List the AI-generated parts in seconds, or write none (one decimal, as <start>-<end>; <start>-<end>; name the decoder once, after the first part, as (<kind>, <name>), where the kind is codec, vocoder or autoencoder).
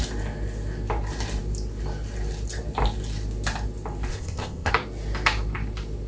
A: 4.1-4.7 (codec, ZipCodec)